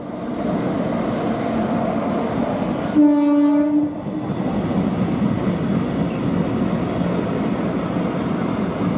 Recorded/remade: recorded